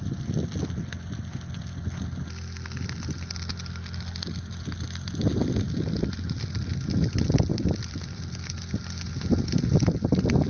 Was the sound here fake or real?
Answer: real